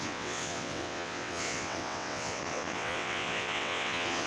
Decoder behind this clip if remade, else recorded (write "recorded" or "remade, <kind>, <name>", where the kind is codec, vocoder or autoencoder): remade, vocoder, WaveNeXt